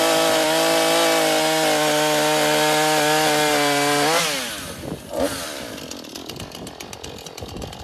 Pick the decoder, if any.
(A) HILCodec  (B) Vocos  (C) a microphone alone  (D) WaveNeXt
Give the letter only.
C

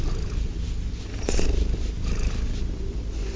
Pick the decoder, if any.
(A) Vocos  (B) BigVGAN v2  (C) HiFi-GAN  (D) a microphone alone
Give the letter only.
D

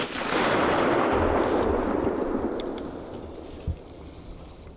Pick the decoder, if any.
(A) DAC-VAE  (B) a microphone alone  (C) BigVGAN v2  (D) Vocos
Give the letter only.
B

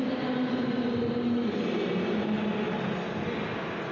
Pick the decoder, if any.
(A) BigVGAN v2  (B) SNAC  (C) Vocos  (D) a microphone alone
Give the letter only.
D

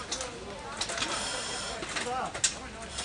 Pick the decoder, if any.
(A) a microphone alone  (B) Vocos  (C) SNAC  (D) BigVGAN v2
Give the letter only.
A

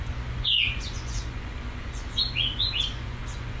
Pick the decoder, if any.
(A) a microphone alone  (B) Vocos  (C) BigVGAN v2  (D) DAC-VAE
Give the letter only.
B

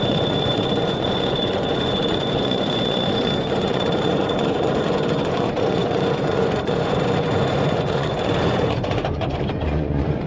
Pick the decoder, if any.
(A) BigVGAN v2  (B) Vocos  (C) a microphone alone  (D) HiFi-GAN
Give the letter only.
B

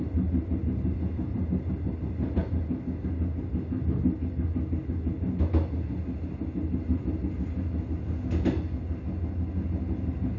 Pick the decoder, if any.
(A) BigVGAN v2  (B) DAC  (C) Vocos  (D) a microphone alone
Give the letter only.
D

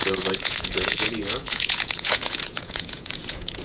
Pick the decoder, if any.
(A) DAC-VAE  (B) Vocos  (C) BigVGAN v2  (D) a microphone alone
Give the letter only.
B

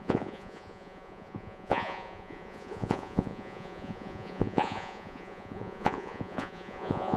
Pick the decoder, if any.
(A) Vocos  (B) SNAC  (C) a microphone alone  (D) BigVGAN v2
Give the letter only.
A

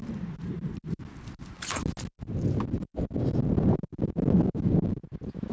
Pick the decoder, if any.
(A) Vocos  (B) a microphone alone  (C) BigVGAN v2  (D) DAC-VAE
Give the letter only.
B